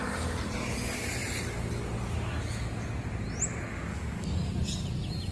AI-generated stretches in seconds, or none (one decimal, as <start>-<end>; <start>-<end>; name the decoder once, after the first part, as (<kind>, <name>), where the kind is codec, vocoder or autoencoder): 3.9-4.5 (codec, DAC)